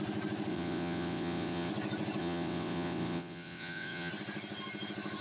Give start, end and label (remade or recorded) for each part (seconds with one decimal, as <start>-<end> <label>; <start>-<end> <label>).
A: 0.0-0.5 recorded; 0.5-1.7 remade; 1.7-2.2 recorded; 2.2-4.1 remade; 4.1-5.2 recorded